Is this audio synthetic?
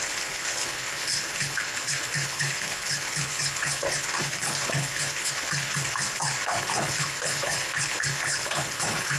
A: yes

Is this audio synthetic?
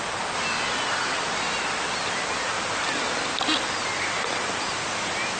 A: no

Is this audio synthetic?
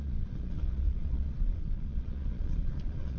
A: yes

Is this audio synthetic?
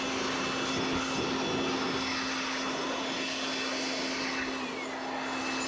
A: no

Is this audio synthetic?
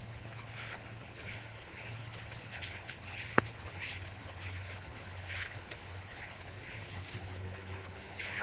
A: yes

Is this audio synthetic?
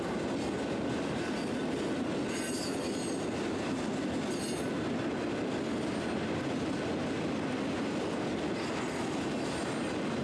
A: no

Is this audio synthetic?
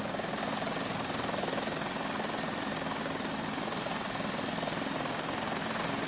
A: no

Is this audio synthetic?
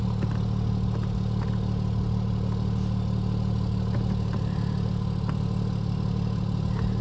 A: no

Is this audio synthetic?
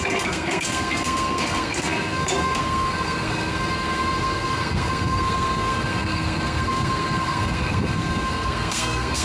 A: yes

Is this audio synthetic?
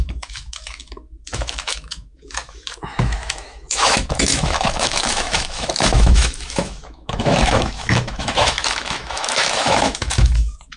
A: yes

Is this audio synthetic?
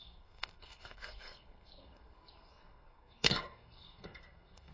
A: yes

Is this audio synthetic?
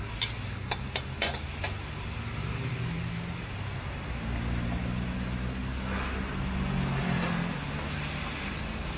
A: no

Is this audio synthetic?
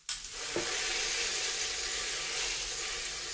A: no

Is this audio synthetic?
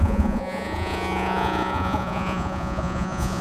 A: yes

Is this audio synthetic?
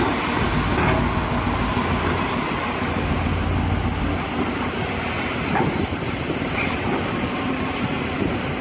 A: no